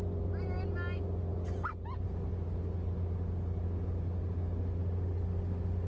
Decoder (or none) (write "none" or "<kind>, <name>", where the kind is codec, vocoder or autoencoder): none